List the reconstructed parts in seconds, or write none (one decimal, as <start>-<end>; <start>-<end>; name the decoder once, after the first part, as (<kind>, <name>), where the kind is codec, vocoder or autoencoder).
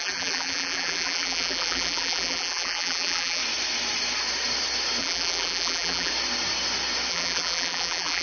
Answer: 0.0-3.4 (vocoder, BigVGAN v2); 5.0-6.1; 7.1-8.2